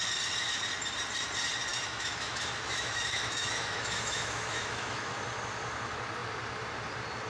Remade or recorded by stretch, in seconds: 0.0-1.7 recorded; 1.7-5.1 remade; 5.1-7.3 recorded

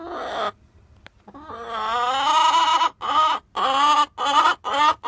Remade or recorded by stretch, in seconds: 0.0-5.1 recorded

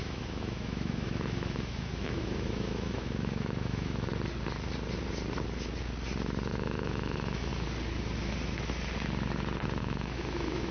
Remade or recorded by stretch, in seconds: 0.0-4.1 remade; 4.1-6.5 recorded; 6.5-7.5 remade; 7.5-9.8 recorded; 9.8-10.7 remade

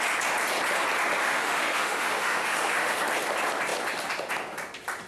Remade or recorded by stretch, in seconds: 0.0-1.2 recorded; 1.2-3.0 remade; 3.0-5.1 recorded

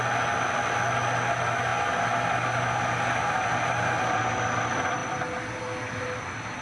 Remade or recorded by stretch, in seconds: 0.0-6.6 recorded

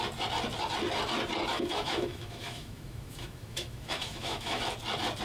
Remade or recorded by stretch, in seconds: 0.0-1.5 recorded; 1.5-4.6 remade; 4.6-5.2 recorded

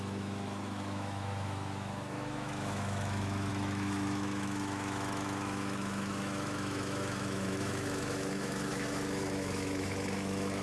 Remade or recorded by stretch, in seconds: 0.0-10.6 remade